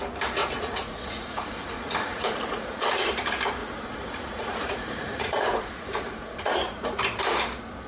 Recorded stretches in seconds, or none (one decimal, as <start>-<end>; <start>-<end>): 0.0-0.4; 3.1-3.6; 7.0-7.9